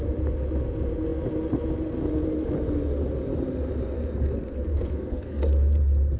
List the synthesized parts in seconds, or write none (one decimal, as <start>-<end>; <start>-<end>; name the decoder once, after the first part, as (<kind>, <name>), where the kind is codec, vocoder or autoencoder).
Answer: 4.7-5.4 (codec, SNAC)